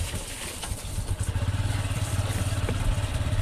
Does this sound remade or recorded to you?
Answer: remade